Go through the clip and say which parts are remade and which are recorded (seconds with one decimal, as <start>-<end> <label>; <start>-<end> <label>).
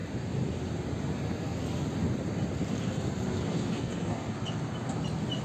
0.0-3.5 recorded; 3.5-4.3 remade; 4.3-5.4 recorded